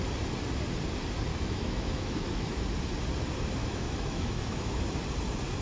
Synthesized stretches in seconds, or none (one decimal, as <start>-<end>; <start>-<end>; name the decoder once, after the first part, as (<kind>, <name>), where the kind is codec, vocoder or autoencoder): 1.3-2.6 (autoencoder, DAC-VAE); 3.6-4.8